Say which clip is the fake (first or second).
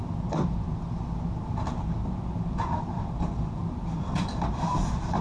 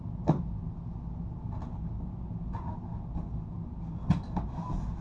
first